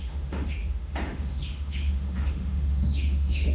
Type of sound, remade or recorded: remade